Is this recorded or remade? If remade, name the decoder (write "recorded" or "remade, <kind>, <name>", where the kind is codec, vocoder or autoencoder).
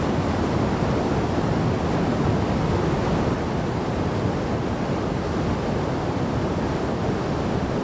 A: recorded